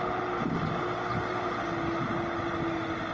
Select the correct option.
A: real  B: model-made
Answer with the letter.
A